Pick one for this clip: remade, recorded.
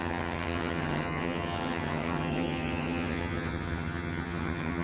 remade